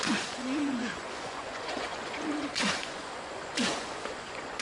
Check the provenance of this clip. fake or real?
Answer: fake